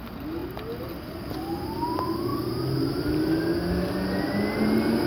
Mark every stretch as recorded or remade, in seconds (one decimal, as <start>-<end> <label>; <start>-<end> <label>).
0.0-5.1 recorded